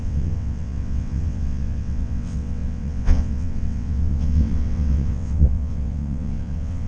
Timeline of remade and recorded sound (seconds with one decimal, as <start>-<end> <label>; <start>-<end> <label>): 0.0-6.9 remade